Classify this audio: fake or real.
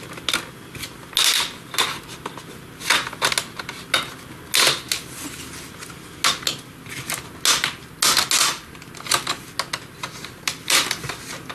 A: real